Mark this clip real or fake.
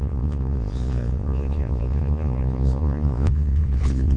fake